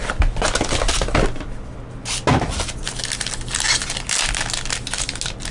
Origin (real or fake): real